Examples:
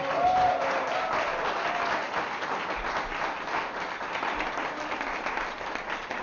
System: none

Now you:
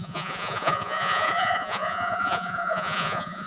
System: vocoder, Vocos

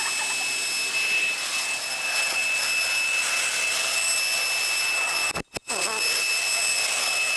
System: none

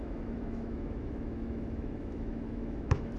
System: autoencoder, DAC-VAE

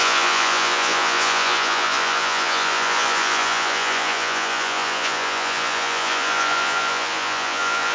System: vocoder, Vocos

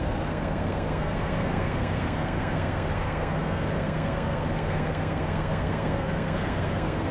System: codec, SNAC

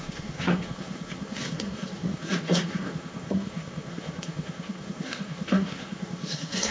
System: codec, SNAC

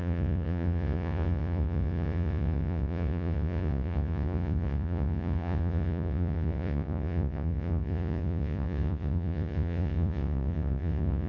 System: vocoder, Vocos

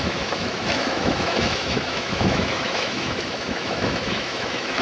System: autoencoder, DAC-VAE